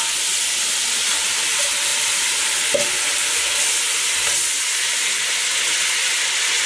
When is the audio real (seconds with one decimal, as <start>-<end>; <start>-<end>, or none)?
0.0-6.7